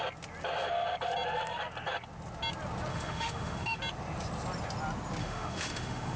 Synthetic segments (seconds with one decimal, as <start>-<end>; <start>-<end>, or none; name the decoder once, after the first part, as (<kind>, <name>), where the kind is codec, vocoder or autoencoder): 2.9-3.8 (autoencoder, DAC-VAE); 5.2-6.2